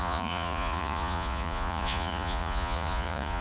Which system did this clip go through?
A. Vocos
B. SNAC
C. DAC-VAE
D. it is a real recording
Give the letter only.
A